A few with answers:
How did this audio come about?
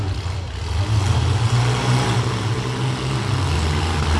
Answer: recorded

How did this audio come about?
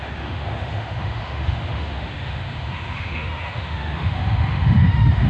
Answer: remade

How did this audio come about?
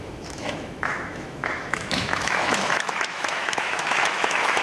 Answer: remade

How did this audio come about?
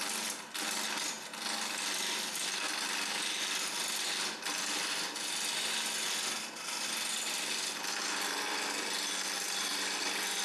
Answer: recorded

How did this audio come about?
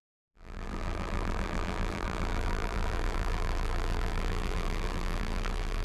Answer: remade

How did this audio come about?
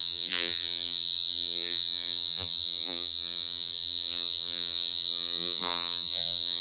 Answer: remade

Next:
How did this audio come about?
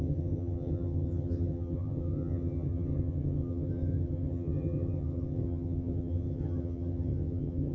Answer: remade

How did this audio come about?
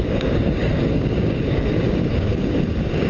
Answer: remade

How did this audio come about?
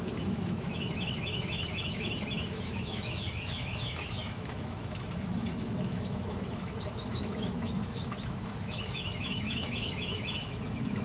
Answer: remade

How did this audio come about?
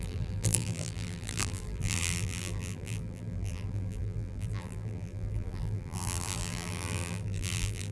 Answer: remade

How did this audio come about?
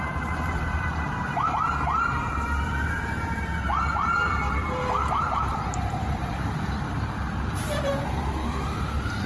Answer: remade